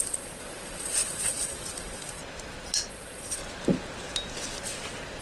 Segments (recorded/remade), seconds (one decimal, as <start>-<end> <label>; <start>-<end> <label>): 0.0-2.2 remade; 2.2-2.9 recorded; 2.9-3.4 remade; 3.4-5.2 recorded